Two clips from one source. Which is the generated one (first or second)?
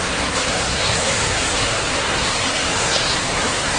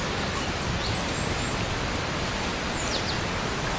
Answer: first